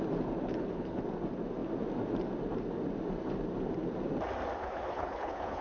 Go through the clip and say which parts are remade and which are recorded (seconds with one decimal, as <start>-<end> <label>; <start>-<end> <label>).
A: 0.0-0.5 recorded; 0.5-1.0 remade; 1.0-4.6 recorded; 4.6-5.6 remade